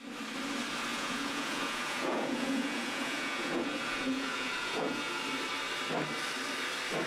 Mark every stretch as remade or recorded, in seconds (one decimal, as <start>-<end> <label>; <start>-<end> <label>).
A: 0.0-0.9 recorded; 0.9-5.2 remade; 5.2-7.1 recorded